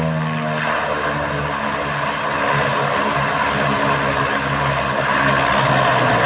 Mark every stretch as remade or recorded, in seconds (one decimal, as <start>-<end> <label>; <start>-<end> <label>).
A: 0.0-6.3 recorded